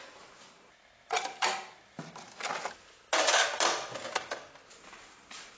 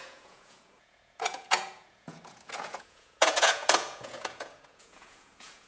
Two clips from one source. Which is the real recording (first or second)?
first